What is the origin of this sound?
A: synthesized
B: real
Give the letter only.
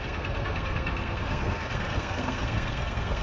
A